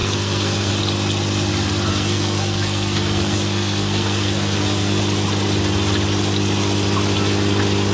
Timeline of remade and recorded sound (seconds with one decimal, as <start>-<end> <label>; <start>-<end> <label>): 0.0-0.7 remade; 0.7-1.9 recorded; 1.9-5.0 remade; 5.0-7.9 recorded